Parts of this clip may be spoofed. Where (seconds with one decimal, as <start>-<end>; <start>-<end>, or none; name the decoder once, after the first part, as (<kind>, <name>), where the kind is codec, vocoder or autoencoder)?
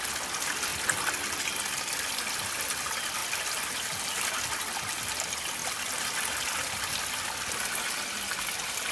3.2-4.2 (vocoder, BigVGAN v2); 5.6-6.9